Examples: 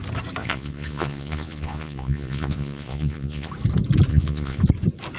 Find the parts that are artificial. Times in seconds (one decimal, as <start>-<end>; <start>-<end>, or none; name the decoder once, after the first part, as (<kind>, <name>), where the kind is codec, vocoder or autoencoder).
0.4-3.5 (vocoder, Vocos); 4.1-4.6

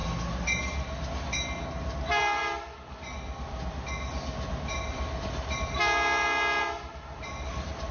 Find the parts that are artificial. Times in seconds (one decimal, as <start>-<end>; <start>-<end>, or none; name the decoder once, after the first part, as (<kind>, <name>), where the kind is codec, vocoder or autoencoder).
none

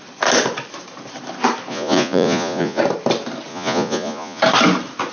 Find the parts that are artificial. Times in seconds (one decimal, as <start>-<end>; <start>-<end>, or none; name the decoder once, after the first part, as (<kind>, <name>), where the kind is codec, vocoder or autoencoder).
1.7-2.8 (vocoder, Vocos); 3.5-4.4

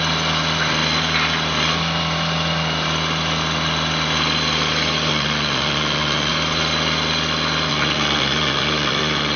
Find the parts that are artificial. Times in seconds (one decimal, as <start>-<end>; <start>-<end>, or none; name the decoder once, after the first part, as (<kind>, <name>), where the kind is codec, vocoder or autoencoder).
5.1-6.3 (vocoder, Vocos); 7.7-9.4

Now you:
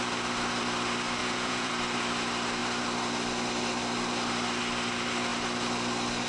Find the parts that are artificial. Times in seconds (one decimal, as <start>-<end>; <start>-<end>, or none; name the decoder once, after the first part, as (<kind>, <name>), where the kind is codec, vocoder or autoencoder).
1.2-1.7 (vocoder, Vocos)

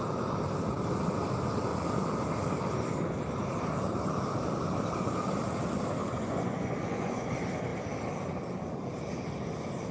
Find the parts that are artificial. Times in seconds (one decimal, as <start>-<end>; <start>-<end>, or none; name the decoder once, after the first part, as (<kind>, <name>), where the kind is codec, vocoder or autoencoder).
6.0-7.3 (vocoder, Vocos)

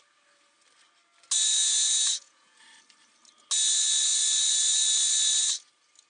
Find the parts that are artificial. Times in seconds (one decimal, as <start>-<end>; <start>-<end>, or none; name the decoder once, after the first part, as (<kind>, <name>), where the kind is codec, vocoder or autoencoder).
1.6-2.6 (vocoder, Vocos)